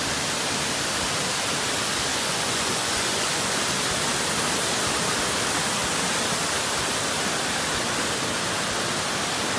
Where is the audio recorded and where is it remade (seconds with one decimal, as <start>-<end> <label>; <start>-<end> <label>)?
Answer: 0.0-2.1 recorded; 2.1-3.6 remade; 3.6-9.6 recorded

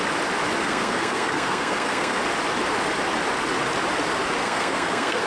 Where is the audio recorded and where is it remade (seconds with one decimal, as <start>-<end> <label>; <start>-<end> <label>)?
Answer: 0.0-0.6 recorded; 0.6-2.2 remade; 2.2-4.4 recorded; 4.4-5.3 remade

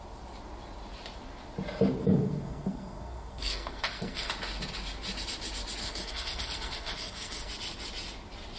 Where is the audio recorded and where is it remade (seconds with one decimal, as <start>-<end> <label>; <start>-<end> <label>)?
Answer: 0.0-2.0 recorded; 2.0-4.3 remade; 4.3-5.8 recorded; 5.8-7.5 remade; 7.5-8.6 recorded

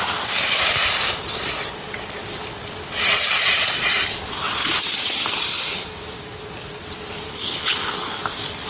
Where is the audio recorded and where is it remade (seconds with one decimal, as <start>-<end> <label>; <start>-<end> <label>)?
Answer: 0.0-7.3 recorded; 7.3-8.2 remade; 8.2-8.7 recorded

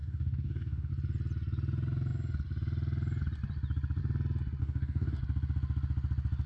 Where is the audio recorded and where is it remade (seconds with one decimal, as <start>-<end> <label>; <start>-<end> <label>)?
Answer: 0.0-0.9 remade; 0.9-4.6 recorded; 4.6-5.2 remade; 5.2-6.5 recorded

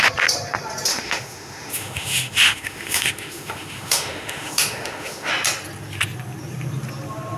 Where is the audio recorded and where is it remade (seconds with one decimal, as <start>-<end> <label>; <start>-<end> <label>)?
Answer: 0.0-0.9 recorded; 0.9-5.3 remade; 5.3-7.4 recorded